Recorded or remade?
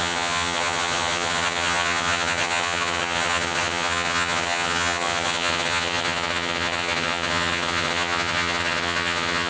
remade